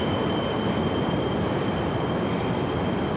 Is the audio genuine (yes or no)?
no